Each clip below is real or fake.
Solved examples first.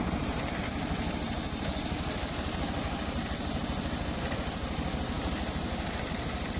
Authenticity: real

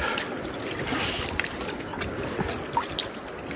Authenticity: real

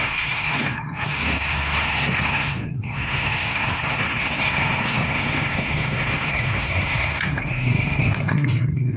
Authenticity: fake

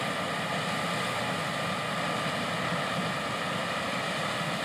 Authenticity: real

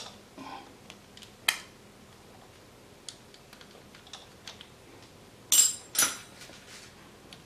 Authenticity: real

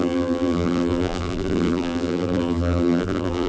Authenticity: fake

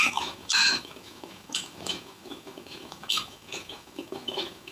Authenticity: fake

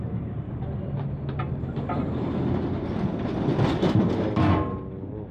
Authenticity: fake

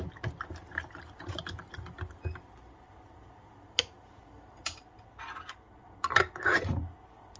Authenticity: real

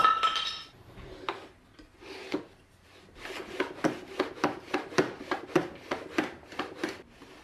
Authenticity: fake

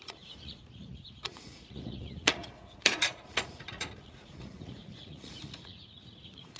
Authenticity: fake